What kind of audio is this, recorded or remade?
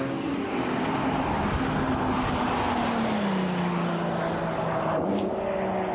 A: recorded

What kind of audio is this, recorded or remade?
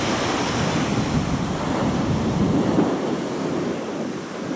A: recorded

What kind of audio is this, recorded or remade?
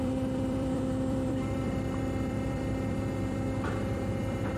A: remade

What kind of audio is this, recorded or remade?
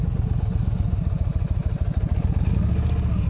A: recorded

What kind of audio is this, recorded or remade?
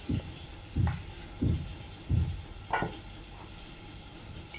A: recorded